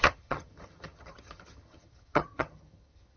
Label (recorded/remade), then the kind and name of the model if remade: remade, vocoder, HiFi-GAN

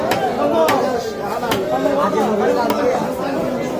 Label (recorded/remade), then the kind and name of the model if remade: recorded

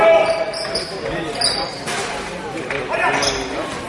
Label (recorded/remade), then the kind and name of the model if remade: recorded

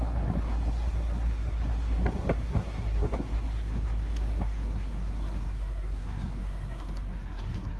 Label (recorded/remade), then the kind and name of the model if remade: remade, codec, SNAC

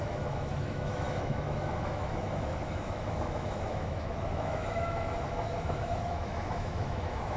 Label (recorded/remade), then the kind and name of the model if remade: remade, autoencoder, DAC-VAE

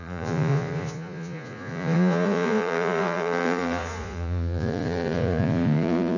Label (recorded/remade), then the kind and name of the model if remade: remade, vocoder, Vocos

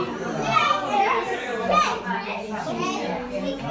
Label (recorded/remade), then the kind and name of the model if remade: recorded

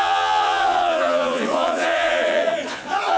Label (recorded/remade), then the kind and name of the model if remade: remade, vocoder, Vocos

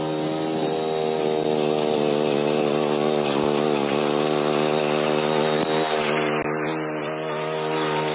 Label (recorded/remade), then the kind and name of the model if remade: recorded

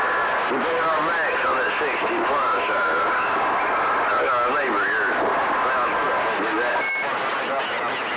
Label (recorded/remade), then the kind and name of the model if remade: recorded